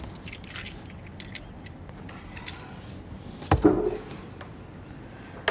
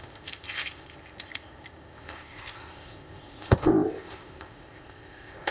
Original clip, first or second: first